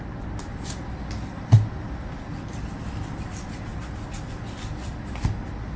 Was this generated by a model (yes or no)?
no